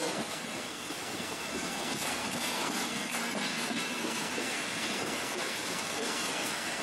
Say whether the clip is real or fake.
fake